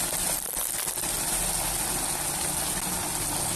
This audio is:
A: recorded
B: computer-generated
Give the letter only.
A